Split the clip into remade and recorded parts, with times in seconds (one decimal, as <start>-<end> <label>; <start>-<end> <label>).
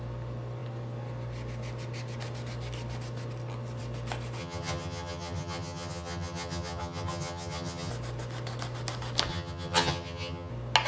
0.0-4.4 recorded; 4.4-7.9 remade; 7.9-9.3 recorded; 9.3-10.5 remade; 10.5-10.9 recorded